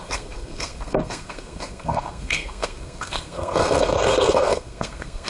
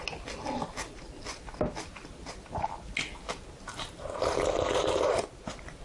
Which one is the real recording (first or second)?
second